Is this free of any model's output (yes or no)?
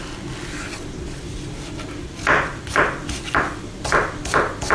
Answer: yes